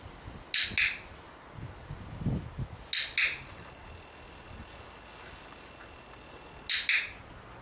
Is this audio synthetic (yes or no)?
no